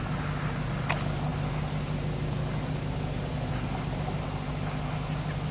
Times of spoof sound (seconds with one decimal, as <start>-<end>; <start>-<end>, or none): none